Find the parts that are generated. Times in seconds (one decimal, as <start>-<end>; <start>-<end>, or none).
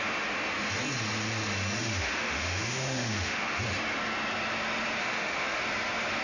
1.8-3.6; 5.0-5.6